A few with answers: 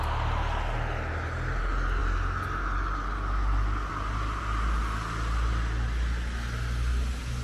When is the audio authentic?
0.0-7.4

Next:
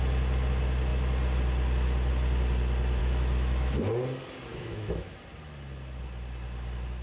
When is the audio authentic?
0.0-3.0; 3.8-4.5; 5.2-7.0

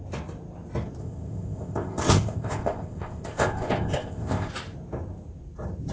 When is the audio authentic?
0.0-1.0; 4.5-5.9

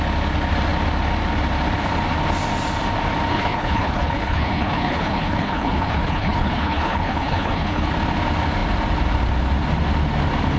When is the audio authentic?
0.0-3.3; 7.9-10.6

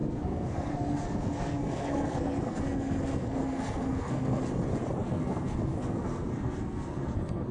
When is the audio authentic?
4.4-5.0

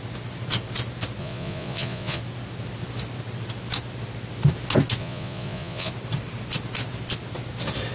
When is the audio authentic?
0.0-1.2; 2.2-5.0; 5.9-7.9